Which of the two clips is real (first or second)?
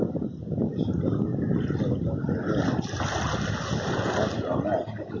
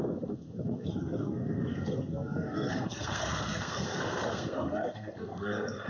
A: first